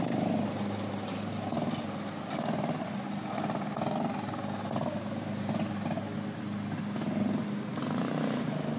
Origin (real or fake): real